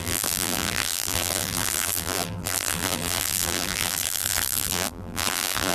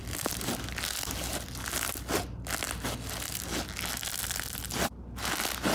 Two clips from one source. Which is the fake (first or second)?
first